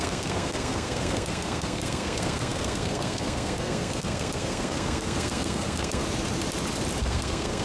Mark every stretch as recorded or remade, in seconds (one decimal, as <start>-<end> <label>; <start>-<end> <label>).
0.0-6.0 remade; 6.0-7.0 recorded; 7.0-7.6 remade